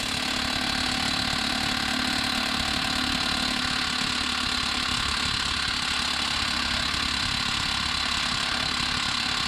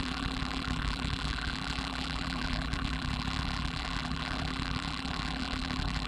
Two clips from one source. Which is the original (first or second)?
first